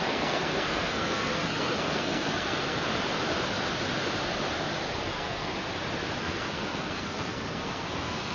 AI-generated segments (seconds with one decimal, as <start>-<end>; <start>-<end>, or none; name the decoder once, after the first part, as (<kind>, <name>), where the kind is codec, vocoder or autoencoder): 0.0-2.9 (codec, SNAC); 5.0-5.5; 6.2-8.3